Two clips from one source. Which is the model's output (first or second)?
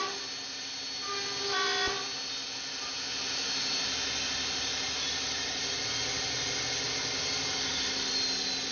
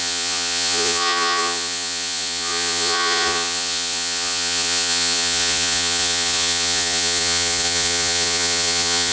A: second